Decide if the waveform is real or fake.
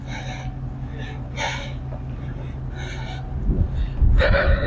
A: real